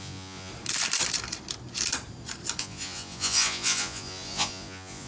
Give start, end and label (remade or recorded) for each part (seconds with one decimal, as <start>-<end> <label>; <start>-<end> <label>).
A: 0.0-0.5 remade; 0.5-2.6 recorded; 2.6-5.1 remade